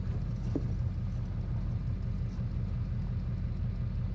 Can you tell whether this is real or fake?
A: real